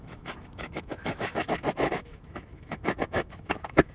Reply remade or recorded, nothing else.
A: remade